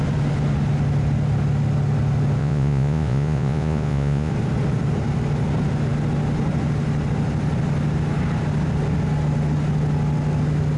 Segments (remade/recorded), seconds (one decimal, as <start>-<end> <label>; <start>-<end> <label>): 0.0-2.4 recorded; 2.4-4.3 remade; 4.3-10.8 recorded